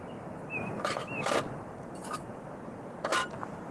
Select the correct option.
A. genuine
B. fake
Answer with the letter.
B